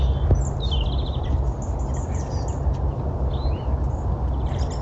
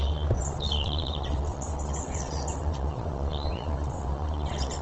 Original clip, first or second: first